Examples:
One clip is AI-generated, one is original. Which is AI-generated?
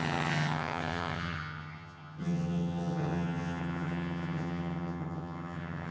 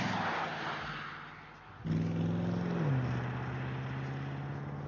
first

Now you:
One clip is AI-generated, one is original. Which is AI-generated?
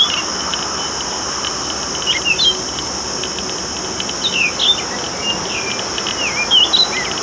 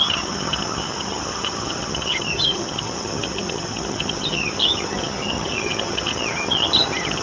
second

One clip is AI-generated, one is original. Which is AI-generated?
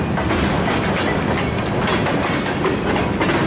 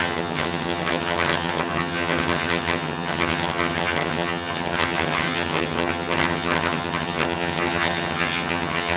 second